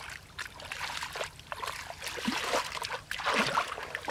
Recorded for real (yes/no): yes